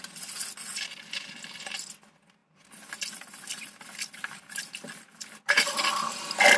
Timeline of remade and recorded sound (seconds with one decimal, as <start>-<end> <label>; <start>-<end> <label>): 0.0-6.6 recorded